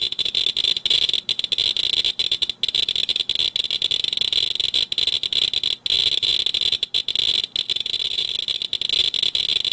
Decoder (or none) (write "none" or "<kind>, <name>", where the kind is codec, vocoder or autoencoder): none